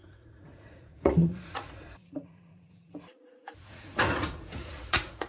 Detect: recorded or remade remade